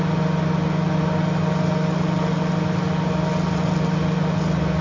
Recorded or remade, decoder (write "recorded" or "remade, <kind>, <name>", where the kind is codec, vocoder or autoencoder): recorded